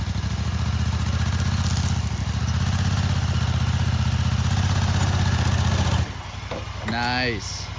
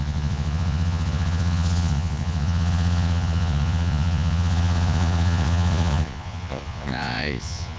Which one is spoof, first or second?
second